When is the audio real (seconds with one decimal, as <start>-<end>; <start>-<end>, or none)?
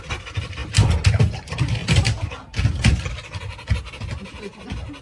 0.6-1.1; 1.8-4.0